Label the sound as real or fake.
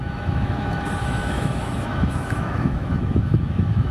fake